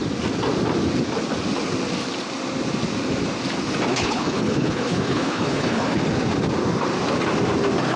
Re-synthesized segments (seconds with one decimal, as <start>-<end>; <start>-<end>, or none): 3.9-6.0